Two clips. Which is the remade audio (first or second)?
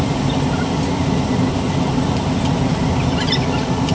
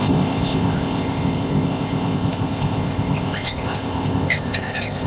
second